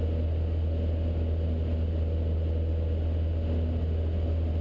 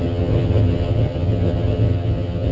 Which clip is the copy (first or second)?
second